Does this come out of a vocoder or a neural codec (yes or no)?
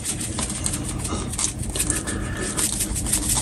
no